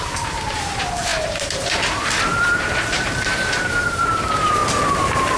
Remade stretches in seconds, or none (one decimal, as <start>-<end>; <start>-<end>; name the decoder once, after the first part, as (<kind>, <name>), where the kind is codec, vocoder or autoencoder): 0.0-4.6 (vocoder, BigVGAN v2)